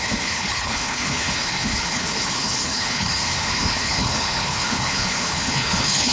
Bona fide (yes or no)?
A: no